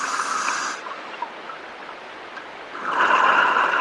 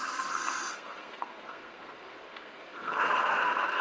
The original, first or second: first